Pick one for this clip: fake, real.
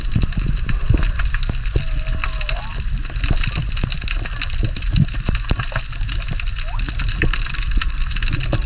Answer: real